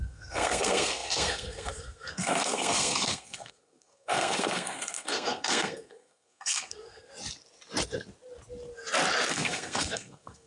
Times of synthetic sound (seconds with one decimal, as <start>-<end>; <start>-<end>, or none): 0.0-7.1; 9.3-10.5